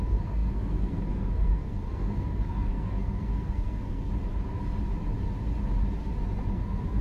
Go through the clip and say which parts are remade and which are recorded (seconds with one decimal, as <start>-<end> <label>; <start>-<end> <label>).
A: 0.0-4.1 remade; 4.1-6.5 recorded; 6.5-7.0 remade